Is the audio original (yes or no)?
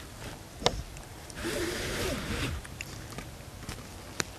yes